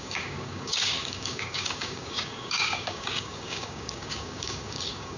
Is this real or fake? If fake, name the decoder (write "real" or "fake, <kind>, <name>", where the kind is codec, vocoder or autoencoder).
fake, codec, DAC